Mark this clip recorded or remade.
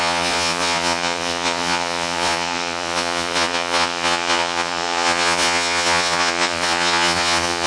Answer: remade